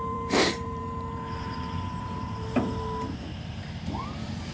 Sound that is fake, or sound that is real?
fake